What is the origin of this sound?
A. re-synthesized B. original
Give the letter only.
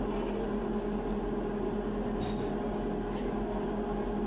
B